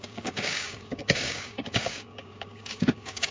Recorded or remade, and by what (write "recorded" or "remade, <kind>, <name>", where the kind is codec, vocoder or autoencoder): remade, codec, DAC